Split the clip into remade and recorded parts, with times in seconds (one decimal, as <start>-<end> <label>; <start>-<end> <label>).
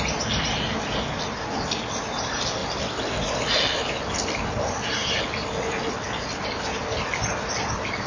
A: 0.0-8.1 recorded